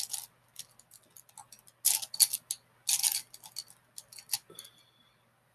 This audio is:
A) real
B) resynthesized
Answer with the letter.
A